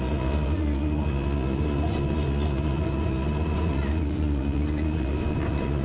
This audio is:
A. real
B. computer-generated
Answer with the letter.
B